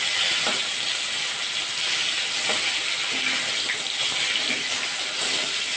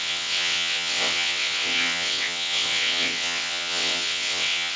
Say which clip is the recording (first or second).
first